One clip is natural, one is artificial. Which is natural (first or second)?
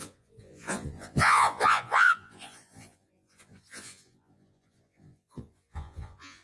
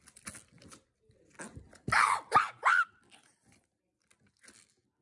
second